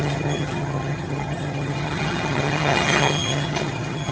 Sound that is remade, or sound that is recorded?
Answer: remade